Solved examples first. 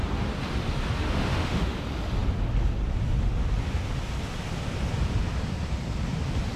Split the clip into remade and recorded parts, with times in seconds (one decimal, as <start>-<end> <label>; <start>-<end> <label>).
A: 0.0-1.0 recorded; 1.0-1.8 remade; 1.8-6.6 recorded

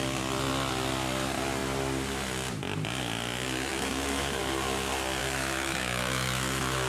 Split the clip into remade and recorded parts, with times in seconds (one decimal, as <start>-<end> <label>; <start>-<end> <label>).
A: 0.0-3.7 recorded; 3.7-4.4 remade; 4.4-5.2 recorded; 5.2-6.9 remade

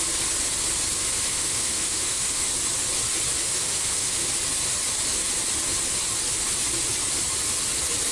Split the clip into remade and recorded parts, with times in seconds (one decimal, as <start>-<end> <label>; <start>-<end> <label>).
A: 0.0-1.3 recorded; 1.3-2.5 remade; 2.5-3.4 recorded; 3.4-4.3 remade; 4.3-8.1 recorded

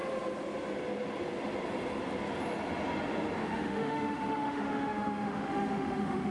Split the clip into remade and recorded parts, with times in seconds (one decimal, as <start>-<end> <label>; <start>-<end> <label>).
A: 0.0-3.4 recorded; 3.4-6.3 remade

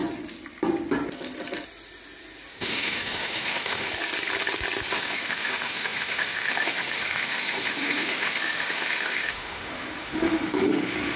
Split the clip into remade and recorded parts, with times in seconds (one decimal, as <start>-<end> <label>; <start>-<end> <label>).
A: 0.0-2.5 recorded; 2.5-3.9 remade; 3.9-4.9 recorded; 4.9-11.2 remade